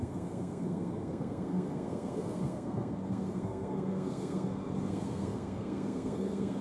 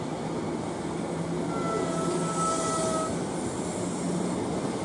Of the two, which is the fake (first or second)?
first